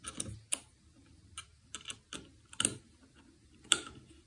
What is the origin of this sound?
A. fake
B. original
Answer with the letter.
B